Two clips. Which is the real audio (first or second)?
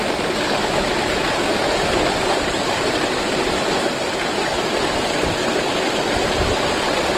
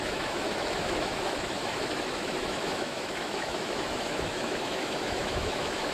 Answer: first